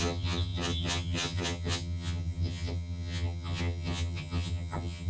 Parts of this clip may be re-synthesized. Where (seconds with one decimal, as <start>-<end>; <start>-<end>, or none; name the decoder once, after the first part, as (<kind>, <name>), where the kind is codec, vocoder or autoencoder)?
0.0-5.1 (vocoder, HiFi-GAN)